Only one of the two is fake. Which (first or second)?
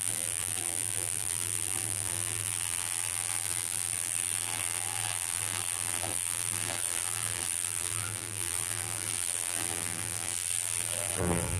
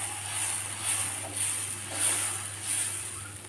first